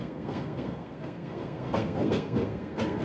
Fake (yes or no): yes